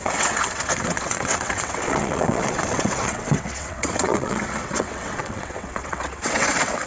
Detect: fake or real fake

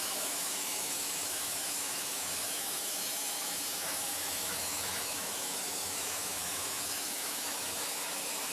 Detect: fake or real fake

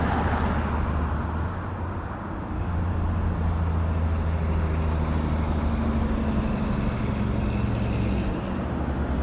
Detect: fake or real real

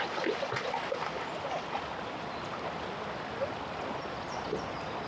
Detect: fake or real fake